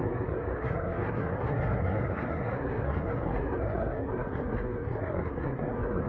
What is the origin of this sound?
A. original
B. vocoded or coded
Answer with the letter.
B